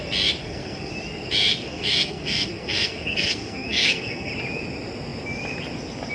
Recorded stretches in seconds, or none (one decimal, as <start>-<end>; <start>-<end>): 0.0-0.4; 0.9-1.5; 4.3-6.1